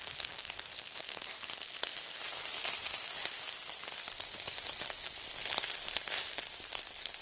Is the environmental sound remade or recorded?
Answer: remade